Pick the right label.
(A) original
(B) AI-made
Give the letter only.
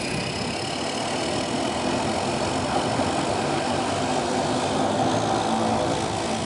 A